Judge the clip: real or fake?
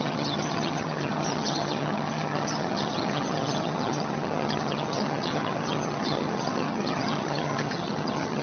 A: fake